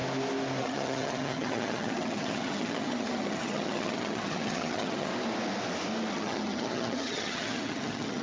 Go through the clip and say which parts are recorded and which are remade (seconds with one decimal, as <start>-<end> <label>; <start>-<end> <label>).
0.0-0.6 recorded; 0.6-5.1 remade; 5.1-6.1 recorded; 6.1-8.2 remade